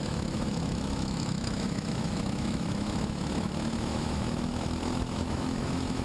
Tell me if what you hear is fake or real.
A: fake